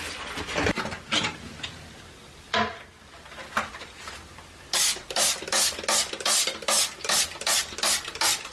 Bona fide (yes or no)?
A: yes